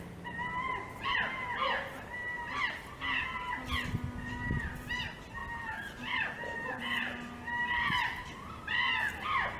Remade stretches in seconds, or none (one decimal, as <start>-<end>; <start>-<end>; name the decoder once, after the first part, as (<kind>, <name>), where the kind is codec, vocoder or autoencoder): 5.4-9.0 (vocoder, BigVGAN v2)